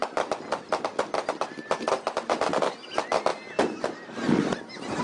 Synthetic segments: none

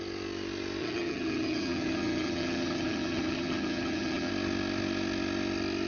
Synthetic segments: 0.8-4.3 (vocoder, HiFi-GAN)

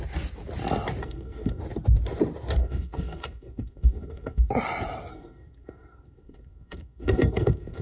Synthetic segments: 1.0-1.6 (codec, SNAC); 2.6-4.5; 5.1-7.8

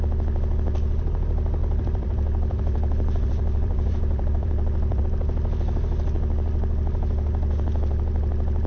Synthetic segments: 1.6-5.0 (vocoder, BigVGAN v2)